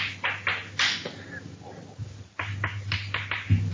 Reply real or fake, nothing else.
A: real